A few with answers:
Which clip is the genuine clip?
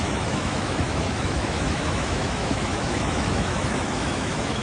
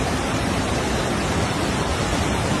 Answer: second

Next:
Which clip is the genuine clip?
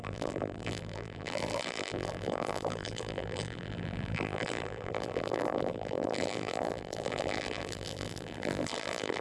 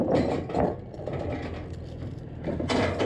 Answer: second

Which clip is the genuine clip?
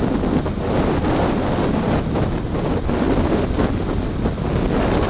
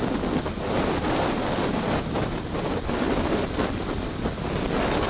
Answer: first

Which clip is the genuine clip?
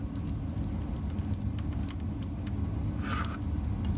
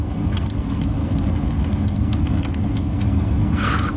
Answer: first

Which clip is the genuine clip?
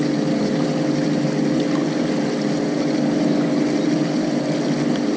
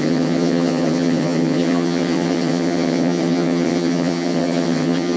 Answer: first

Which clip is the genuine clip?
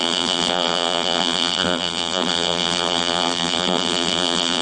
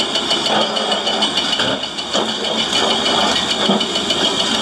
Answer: second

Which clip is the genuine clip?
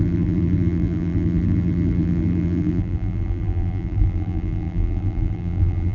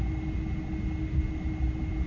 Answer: second